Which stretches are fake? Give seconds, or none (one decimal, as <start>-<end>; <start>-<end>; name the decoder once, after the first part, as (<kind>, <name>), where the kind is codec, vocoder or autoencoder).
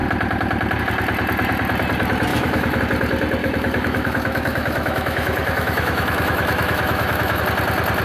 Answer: 2.3-2.8 (autoencoder, DAC-VAE); 3.4-7.4